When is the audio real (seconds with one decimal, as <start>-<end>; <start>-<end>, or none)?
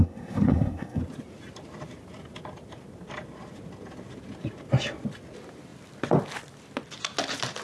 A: 1.0-7.6